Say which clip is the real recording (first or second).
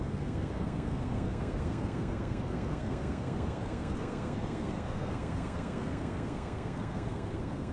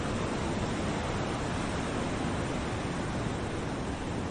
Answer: second